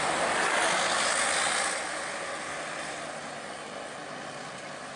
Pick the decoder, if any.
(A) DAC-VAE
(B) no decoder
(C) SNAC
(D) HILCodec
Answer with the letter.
B